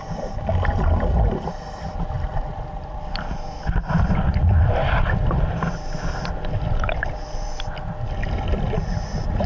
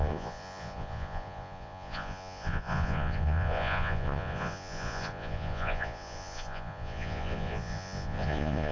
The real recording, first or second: first